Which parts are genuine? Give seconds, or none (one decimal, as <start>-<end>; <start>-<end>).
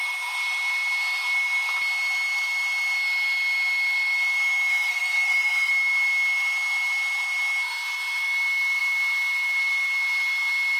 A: 0.0-4.7; 5.7-10.8